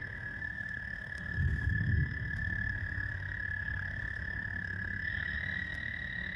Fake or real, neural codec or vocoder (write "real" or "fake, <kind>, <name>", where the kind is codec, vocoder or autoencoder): fake, codec, SNAC